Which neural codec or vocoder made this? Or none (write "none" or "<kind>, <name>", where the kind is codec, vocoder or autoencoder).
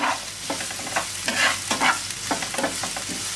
none